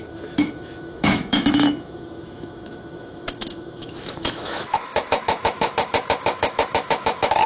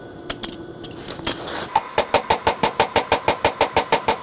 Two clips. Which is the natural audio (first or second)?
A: second